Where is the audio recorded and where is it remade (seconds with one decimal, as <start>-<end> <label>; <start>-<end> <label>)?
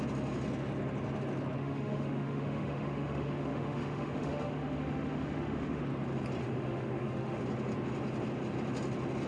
0.0-1.6 recorded; 1.6-5.8 remade; 5.8-6.4 recorded; 6.4-7.4 remade; 7.4-9.3 recorded